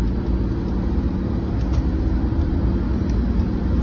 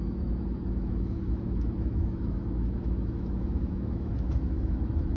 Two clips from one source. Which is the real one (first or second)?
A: first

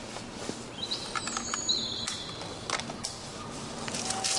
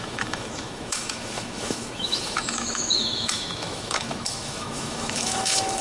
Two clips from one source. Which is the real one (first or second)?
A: first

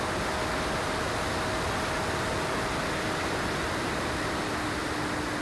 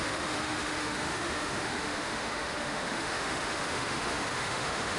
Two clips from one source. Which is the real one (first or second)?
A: first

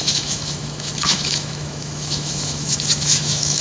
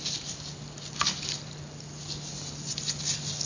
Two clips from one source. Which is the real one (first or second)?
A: second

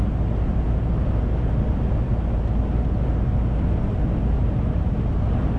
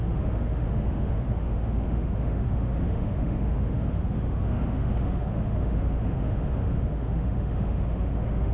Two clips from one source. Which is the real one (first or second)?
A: first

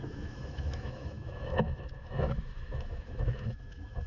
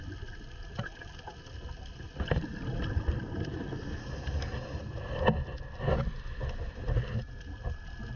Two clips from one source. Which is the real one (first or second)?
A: second